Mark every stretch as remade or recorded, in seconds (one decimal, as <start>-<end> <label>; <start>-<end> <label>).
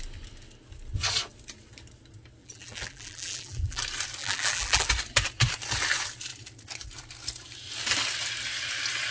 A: 0.0-2.4 recorded; 2.4-3.8 remade; 3.8-4.2 recorded; 4.2-4.9 remade; 4.9-9.1 recorded